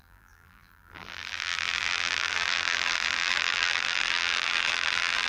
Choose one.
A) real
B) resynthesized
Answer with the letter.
B